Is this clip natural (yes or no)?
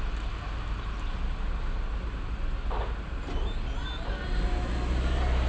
yes